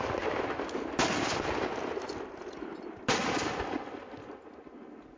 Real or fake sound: real